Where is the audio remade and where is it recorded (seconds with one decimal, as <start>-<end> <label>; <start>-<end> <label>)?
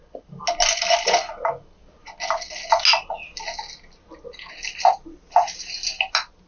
0.0-6.5 recorded